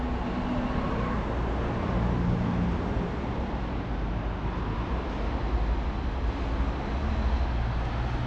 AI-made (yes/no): no